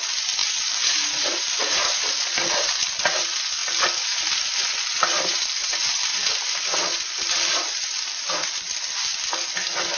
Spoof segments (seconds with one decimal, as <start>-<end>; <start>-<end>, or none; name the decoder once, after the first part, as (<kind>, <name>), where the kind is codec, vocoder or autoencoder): 0.0-0.4 (vocoder, BigVGAN v2); 1.5-3.6; 4.2-10.0